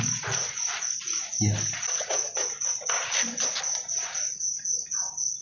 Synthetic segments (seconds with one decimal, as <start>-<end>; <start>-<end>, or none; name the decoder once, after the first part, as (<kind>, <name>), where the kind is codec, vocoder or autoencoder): none